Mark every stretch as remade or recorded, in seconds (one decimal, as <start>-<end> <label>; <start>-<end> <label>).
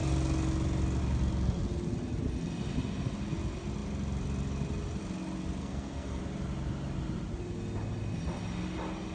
0.0-5.6 recorded; 5.6-6.2 remade; 6.2-9.1 recorded